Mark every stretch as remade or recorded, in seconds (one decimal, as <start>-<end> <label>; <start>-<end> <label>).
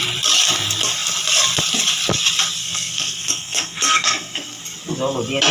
0.0-2.6 recorded; 2.6-4.6 remade; 4.6-5.5 recorded